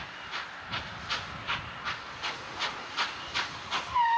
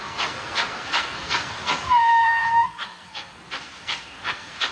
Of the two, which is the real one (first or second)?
first